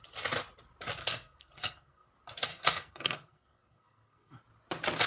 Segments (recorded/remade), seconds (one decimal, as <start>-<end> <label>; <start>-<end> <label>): 0.0-1.0 recorded; 1.0-2.1 remade; 2.1-2.5 recorded; 2.5-4.4 remade; 4.4-5.1 recorded